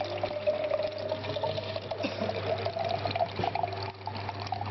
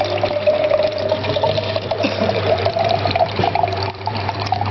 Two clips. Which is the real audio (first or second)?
first